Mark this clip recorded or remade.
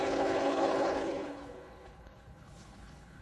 remade